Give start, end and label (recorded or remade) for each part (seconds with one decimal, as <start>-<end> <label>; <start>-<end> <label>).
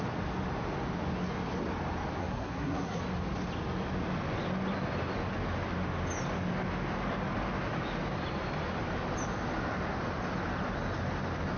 0.0-2.2 recorded; 2.2-3.0 remade; 3.0-11.6 recorded